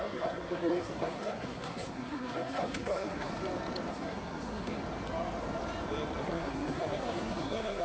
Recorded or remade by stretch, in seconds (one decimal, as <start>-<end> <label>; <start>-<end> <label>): 0.0-3.3 remade; 3.3-3.9 recorded; 3.9-4.8 remade; 4.8-6.2 recorded; 6.2-7.8 remade